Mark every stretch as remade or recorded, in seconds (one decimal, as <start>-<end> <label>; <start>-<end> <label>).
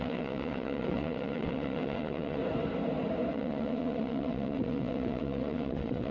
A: 0.0-2.4 remade; 2.4-3.3 recorded; 3.3-6.1 remade